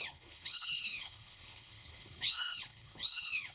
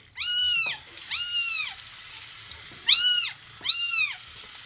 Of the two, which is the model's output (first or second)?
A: first